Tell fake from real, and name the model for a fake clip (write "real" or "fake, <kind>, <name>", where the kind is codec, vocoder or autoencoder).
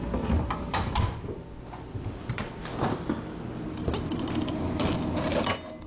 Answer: real